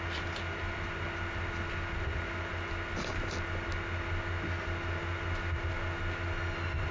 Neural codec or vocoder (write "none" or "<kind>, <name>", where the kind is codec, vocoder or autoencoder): none